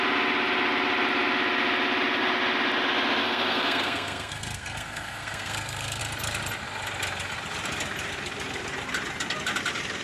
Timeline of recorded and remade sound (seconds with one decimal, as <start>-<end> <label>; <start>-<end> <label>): 0.0-3.2 recorded; 3.2-6.0 remade; 6.0-10.0 recorded